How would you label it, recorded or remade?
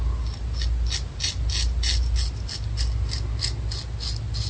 recorded